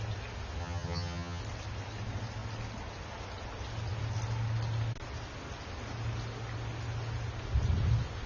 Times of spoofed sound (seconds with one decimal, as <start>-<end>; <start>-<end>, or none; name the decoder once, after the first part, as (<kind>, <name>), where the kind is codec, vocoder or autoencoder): 0.6-1.4 (vocoder, HiFi-GAN)